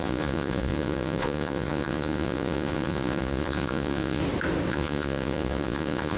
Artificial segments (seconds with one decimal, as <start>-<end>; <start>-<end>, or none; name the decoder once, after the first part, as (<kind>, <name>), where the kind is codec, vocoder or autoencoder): 0.0-4.2 (vocoder, Vocos); 4.7-6.2